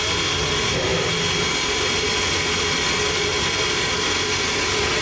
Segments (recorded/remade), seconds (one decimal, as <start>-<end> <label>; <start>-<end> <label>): 0.0-5.0 recorded